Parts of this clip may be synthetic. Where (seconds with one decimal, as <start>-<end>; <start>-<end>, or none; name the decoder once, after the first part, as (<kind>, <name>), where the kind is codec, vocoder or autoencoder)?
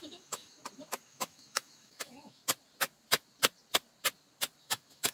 0.0-0.6 (autoencoder, DAC-VAE); 1.1-2.4; 4.6-5.1